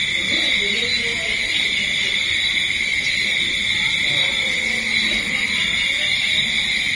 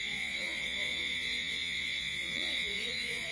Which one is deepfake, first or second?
second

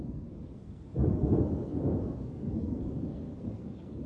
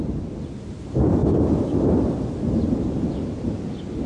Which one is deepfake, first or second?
first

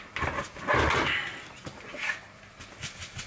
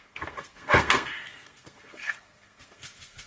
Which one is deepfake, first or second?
second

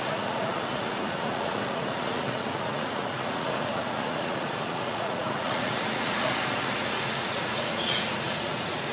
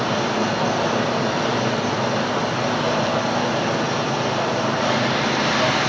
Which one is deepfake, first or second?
first